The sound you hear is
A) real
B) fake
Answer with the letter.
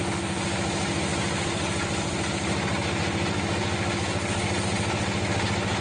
A